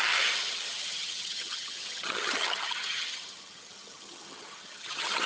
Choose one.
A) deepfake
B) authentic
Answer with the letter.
A